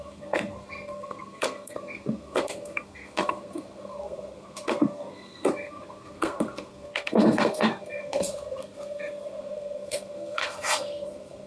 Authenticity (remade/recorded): remade